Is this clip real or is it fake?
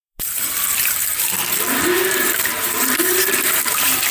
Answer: fake